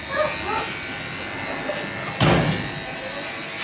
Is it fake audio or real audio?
real